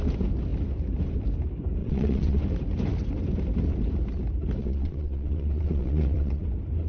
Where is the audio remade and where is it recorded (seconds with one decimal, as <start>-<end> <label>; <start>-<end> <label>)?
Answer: 0.0-1.8 recorded; 1.8-2.4 remade; 2.4-4.6 recorded; 4.6-6.4 remade; 6.4-6.9 recorded